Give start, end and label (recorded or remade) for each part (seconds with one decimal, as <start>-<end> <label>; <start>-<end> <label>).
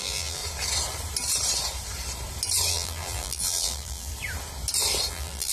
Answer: 0.0-0.4 remade; 0.4-2.7 recorded; 2.7-4.1 remade; 4.1-5.1 recorded; 5.1-5.5 remade